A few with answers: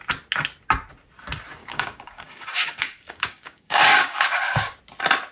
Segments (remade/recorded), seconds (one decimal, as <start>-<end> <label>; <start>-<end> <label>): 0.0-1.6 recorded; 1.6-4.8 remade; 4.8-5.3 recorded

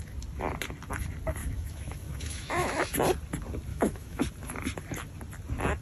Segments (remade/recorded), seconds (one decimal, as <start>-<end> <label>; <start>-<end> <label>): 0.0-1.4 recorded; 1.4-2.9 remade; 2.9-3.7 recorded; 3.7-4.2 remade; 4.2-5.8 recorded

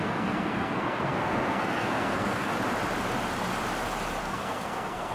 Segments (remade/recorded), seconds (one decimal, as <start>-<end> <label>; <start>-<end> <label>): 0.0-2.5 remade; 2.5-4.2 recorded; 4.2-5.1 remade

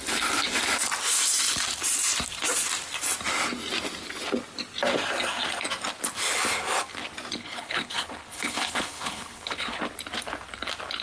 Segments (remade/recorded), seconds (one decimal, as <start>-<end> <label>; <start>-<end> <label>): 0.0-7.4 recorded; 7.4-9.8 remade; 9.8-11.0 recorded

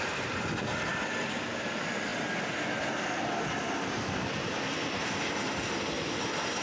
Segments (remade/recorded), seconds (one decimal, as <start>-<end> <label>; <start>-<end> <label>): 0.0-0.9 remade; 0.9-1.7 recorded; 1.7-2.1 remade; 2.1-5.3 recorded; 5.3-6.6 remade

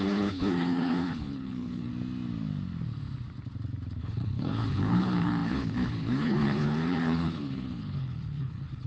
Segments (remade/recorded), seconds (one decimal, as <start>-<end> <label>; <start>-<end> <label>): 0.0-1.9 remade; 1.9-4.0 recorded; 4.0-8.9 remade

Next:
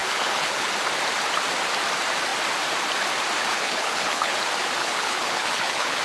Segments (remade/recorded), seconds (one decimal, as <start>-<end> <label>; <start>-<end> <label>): 0.0-0.7 remade; 0.7-3.5 recorded; 3.5-4.3 remade; 4.3-4.8 recorded; 4.8-6.0 remade